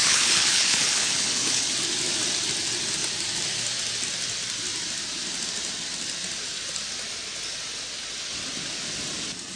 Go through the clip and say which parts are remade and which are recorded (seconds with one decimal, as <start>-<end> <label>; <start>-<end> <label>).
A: 0.0-1.7 remade; 1.7-9.6 recorded

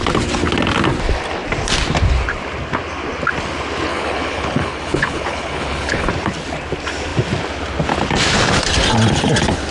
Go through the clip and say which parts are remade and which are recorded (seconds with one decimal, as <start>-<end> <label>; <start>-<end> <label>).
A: 0.0-3.9 recorded; 3.9-6.1 remade; 6.1-9.7 recorded

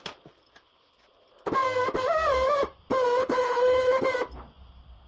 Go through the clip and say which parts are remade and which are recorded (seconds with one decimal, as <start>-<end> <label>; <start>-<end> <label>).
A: 0.0-3.2 recorded; 3.2-4.0 remade; 4.0-5.1 recorded